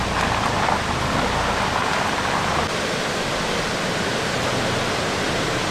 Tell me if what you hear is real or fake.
real